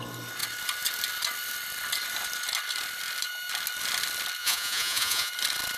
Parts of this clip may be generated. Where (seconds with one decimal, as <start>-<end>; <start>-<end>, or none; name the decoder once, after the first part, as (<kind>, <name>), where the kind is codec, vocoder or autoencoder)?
4.4-5.3 (vocoder, Vocos)